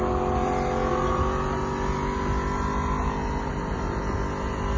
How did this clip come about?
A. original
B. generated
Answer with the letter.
A